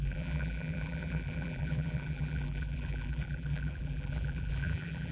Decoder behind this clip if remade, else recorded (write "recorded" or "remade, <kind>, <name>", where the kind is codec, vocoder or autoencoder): remade, vocoder, BigVGAN v2